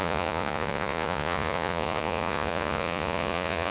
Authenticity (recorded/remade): remade